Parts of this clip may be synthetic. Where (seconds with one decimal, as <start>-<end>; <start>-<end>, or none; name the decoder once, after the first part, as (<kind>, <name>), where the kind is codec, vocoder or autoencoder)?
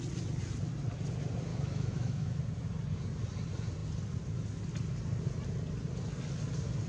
1.5-2.4 (autoencoder, DAC-VAE)